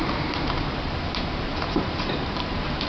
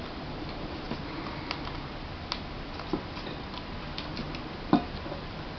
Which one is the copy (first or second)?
first